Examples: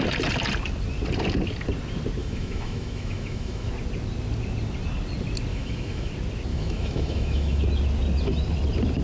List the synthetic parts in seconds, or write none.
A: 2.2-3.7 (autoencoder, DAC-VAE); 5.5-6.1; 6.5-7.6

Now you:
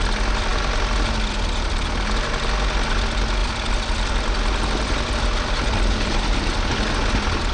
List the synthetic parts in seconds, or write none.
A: 3.4-6.7 (vocoder, BigVGAN v2)

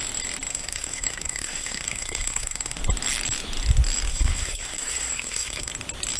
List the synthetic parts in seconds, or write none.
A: 0.5-2.8 (codec, SNAC); 4.1-5.7

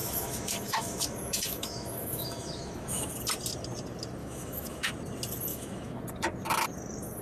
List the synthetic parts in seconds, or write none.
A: 0.0-3.1 (autoencoder, DAC-VAE); 4.2-4.9; 5.5-6.0

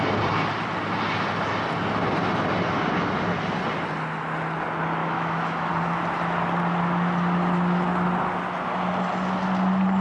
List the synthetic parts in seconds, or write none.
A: 5.0-5.7 (autoencoder, DAC-VAE)

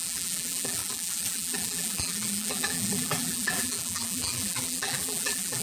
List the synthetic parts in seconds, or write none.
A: 0.0-5.6 (vocoder, BigVGAN v2)